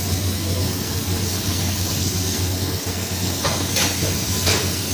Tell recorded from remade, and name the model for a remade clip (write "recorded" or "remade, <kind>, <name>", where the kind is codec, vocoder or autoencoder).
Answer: remade, codec, SNAC